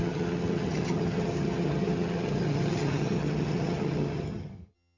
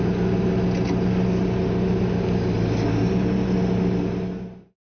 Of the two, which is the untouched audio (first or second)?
second